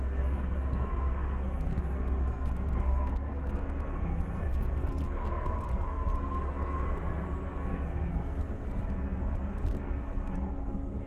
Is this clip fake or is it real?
fake